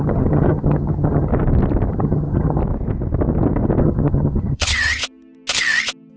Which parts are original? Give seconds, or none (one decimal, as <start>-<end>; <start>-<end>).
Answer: 1.3-1.9; 2.6-3.8; 5.0-6.2